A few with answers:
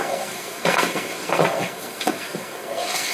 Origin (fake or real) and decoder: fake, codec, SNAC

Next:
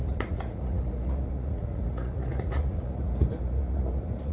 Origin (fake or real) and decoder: fake, vocoder, Vocos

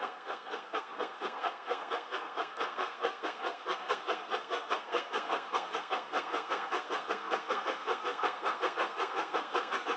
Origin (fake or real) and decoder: fake, codec, SNAC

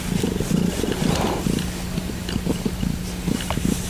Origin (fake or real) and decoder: real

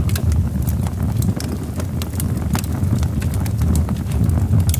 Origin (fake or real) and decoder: real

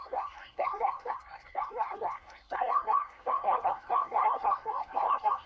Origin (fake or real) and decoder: fake, codec, SNAC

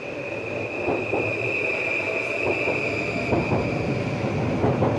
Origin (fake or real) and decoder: real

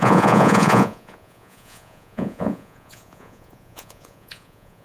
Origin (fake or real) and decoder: fake, vocoder, Vocos